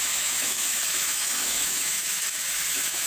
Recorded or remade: remade